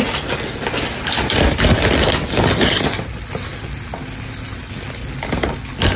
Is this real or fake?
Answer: real